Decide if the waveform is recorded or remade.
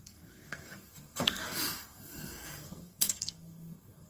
remade